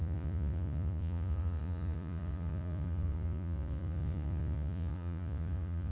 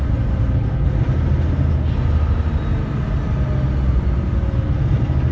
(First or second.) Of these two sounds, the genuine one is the second